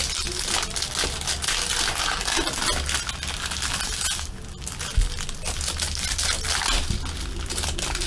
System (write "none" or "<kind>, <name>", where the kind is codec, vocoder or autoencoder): none